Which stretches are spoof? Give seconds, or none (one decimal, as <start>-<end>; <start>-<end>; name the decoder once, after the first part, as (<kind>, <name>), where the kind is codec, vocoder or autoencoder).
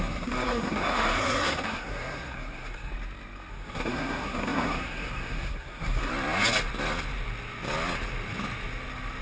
0.0-2.9 (codec, SNAC); 3.5-6.1